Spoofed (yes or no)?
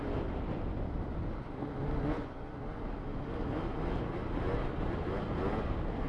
no